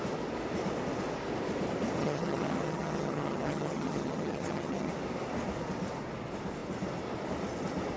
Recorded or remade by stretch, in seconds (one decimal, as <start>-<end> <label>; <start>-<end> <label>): 0.0-2.0 recorded; 2.0-4.9 remade; 4.9-8.0 recorded